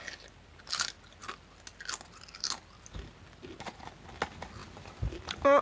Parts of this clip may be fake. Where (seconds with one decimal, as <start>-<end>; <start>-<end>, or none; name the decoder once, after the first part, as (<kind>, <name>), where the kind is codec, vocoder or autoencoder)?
none